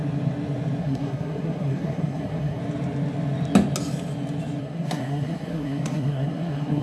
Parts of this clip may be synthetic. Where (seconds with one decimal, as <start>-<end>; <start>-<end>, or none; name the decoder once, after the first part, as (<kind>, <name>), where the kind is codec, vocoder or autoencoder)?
0.8-2.6 (codec, SNAC); 4.6-6.8